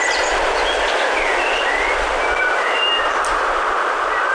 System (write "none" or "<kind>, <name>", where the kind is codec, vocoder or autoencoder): none